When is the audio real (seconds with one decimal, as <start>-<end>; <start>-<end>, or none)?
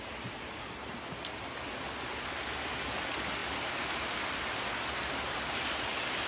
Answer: 0.0-6.3